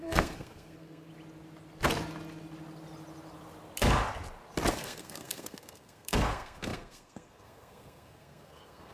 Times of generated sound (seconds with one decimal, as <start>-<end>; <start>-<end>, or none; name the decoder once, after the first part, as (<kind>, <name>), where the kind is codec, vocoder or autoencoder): 0.0-1.1 (codec, SNAC); 4.7-8.9